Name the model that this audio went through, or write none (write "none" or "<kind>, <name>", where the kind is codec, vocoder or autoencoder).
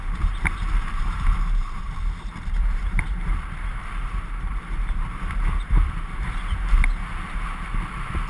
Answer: vocoder, BigVGAN v2